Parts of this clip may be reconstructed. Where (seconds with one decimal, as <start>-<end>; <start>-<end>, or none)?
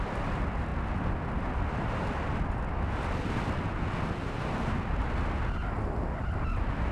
none